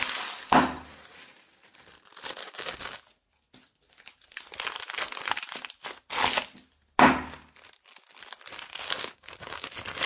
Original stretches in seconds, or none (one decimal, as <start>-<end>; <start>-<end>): 0.0-2.4; 3.0-8.7; 9.7-10.1